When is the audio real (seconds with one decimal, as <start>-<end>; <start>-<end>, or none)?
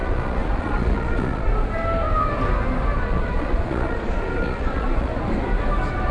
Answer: 1.5-3.0; 5.1-6.1